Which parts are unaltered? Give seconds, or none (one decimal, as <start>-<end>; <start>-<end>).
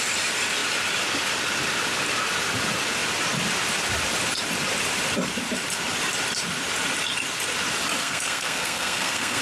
0.0-8.0